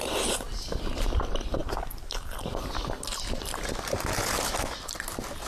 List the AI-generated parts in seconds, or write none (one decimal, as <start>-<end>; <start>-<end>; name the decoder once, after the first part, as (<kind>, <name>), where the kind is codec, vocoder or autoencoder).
none